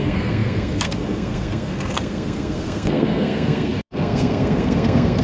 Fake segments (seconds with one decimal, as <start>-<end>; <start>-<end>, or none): 0.0-5.2